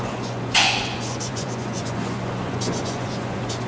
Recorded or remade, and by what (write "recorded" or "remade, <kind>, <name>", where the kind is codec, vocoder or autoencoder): remade, vocoder, Vocos